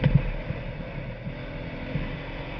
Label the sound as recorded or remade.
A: recorded